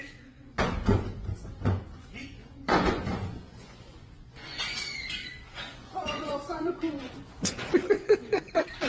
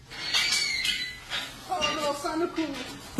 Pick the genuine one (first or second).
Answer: second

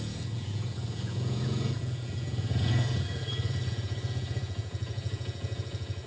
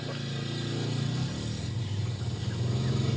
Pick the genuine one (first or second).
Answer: second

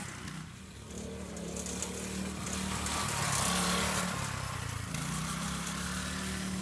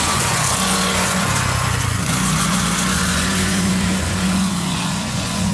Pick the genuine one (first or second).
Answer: first